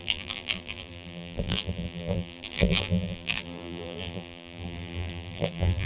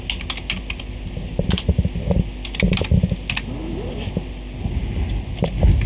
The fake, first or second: first